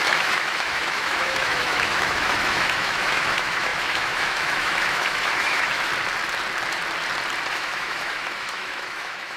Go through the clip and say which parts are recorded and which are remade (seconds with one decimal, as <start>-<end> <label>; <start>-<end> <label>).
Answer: 0.0-5.9 remade; 5.9-7.5 recorded; 7.5-9.4 remade